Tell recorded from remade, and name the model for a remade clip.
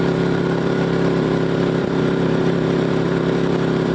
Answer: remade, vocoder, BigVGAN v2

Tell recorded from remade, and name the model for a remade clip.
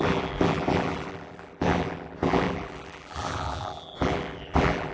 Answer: remade, vocoder, BigVGAN v2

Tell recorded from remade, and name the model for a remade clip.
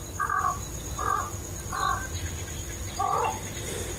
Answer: recorded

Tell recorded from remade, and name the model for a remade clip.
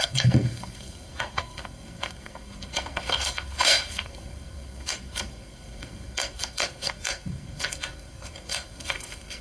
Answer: remade, codec, SNAC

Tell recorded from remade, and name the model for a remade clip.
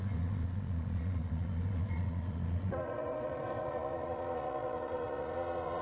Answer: remade, vocoder, Vocos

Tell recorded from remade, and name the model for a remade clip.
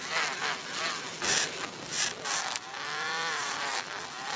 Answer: recorded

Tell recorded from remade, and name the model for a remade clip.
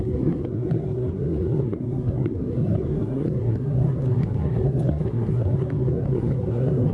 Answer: remade, codec, SNAC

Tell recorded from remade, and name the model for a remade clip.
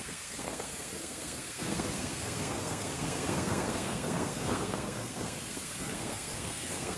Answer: remade, codec, SNAC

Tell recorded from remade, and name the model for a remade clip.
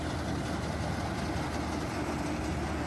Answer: recorded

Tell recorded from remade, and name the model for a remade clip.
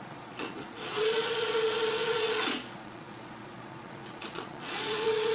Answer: remade, vocoder, Vocos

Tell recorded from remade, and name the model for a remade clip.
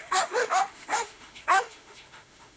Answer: remade, autoencoder, DAC-VAE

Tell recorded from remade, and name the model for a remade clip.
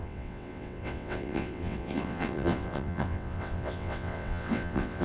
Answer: remade, vocoder, WaveNeXt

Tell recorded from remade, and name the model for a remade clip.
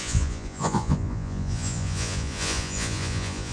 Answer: remade, vocoder, Vocos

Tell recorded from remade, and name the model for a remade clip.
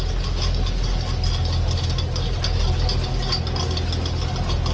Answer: recorded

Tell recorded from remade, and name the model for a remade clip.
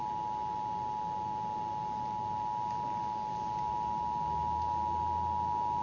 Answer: recorded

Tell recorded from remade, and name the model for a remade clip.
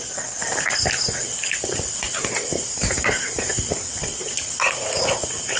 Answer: remade, vocoder, BigVGAN v2